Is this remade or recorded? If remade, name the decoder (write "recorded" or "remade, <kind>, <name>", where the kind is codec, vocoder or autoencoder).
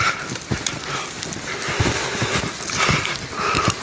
recorded